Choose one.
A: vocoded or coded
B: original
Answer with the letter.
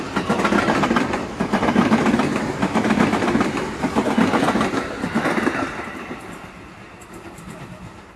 B